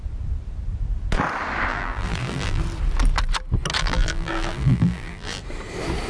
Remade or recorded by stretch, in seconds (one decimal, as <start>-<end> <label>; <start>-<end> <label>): 0.0-1.7 recorded; 1.7-2.6 remade; 2.6-3.8 recorded; 3.8-5.4 remade; 5.4-6.1 recorded